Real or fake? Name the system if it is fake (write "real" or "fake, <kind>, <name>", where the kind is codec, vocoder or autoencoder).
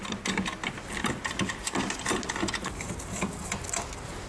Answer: real